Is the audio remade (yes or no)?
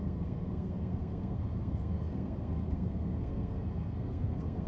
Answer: yes